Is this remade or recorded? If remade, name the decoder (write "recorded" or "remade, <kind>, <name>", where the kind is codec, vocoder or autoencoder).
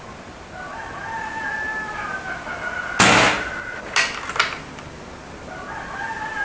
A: recorded